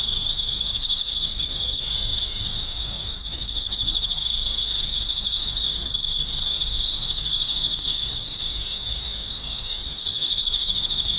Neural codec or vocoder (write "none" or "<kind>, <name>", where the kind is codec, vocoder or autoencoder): codec, DAC